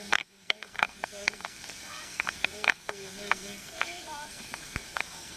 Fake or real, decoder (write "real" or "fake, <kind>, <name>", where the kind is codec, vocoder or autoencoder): fake, codec, SNAC